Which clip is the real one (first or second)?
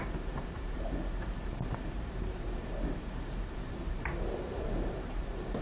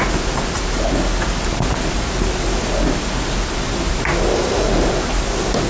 second